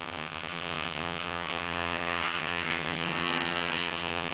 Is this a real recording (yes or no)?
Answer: no